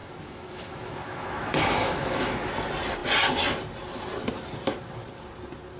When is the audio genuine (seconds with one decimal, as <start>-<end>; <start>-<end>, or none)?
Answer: 2.5-5.8